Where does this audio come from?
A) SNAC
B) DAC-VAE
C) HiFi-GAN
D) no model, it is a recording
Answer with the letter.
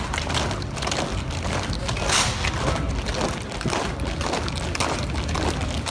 D